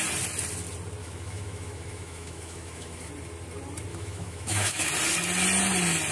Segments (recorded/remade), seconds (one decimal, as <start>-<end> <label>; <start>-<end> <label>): 0.0-1.0 recorded; 1.0-3.1 remade; 3.1-3.9 recorded; 3.9-4.9 remade; 4.9-6.1 recorded